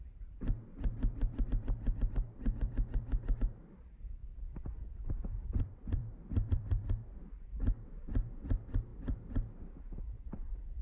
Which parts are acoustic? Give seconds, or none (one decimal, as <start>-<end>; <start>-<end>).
4.2-5.6